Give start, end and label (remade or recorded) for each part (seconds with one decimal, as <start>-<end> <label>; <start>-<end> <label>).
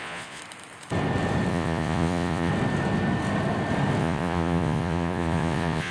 0.0-0.4 remade; 0.4-1.5 recorded; 1.5-2.5 remade; 2.5-4.0 recorded; 4.0-5.9 remade